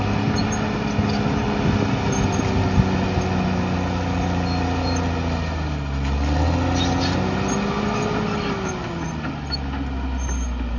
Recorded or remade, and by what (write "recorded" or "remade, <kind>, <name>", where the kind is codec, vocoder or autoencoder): recorded